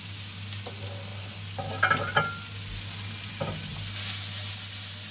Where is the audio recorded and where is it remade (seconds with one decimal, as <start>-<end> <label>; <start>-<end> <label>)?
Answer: 0.0-5.1 recorded